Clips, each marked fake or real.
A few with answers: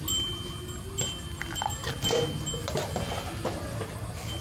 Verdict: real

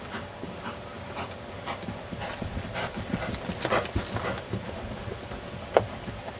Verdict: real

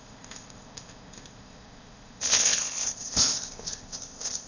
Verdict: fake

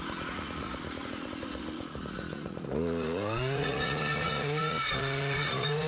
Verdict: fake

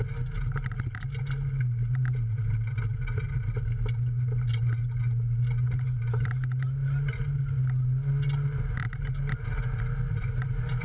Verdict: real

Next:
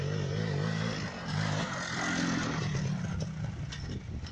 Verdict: real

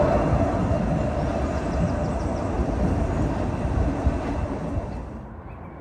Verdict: real